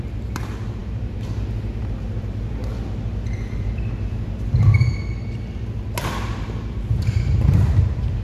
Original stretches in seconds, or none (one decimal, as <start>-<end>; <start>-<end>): 2.7-6.4